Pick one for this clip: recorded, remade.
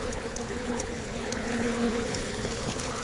remade